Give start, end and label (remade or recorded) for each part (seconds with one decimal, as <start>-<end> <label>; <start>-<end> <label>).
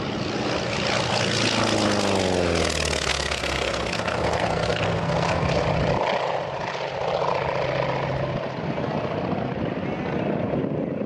0.0-3.1 recorded; 3.1-5.6 remade; 5.6-11.1 recorded